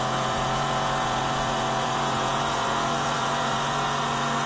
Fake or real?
fake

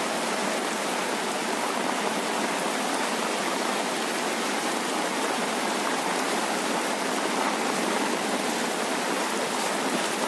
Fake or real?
real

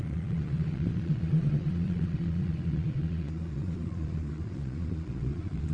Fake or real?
fake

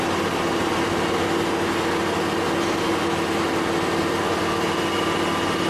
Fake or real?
real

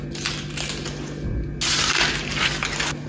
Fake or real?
real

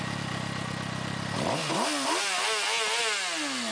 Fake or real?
real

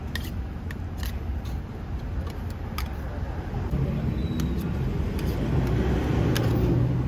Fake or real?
real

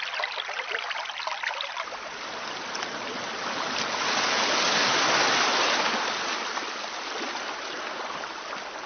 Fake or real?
real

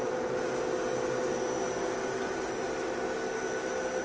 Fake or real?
real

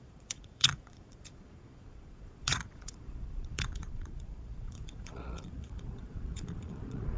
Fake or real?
fake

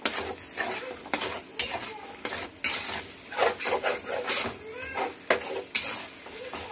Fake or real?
real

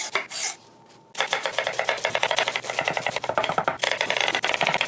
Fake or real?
real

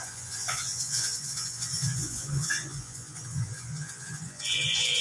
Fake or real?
fake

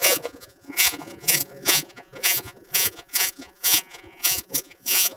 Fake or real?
fake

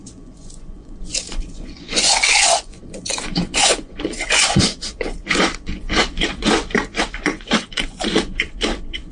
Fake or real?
fake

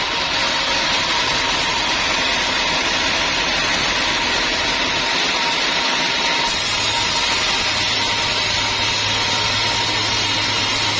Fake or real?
real